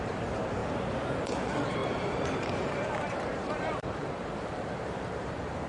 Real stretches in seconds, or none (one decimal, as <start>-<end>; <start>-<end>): 0.6-1.2